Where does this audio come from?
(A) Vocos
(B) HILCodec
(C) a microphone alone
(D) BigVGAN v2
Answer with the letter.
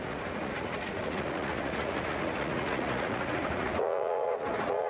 A